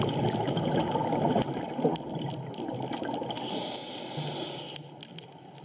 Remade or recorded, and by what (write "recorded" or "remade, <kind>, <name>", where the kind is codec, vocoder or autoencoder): recorded